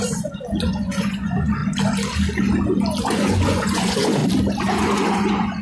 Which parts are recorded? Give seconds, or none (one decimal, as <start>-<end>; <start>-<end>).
1.6-3.0; 4.2-4.7